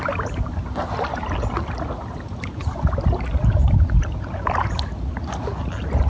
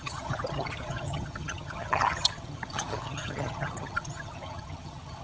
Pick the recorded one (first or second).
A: first